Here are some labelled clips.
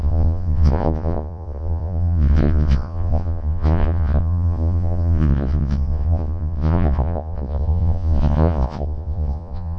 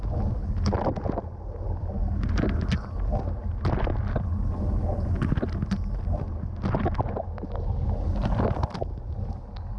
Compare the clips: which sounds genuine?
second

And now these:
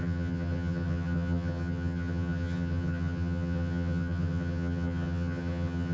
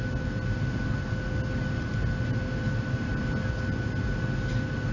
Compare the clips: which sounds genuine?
second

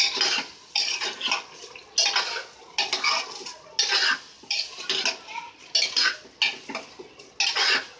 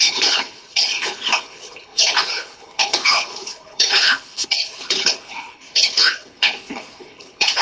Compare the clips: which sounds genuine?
first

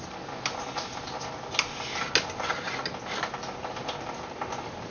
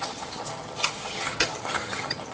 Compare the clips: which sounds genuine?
first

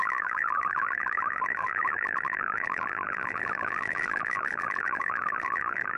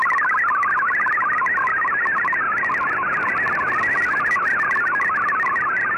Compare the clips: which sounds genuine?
second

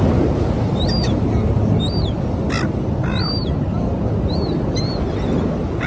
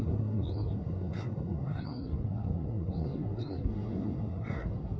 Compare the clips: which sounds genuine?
first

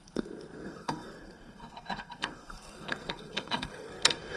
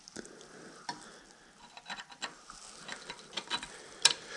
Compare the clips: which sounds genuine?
second